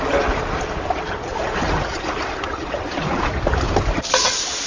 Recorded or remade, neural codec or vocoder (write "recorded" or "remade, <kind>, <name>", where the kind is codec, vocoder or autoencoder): recorded